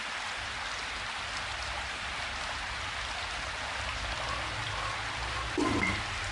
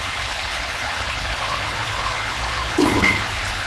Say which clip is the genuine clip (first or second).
first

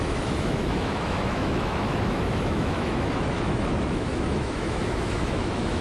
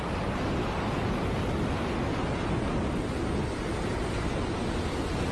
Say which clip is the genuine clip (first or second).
second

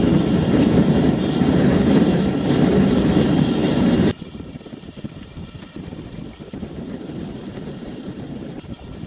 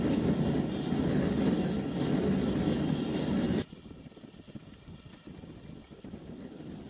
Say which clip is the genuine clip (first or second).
second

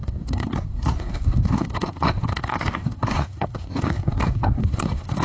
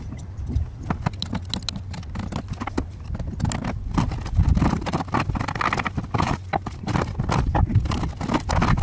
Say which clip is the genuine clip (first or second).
second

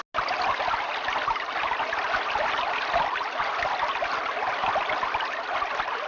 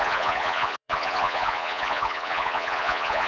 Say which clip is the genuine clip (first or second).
first